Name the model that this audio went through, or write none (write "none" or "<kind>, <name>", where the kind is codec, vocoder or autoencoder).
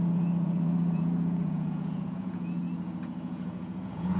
vocoder, Vocos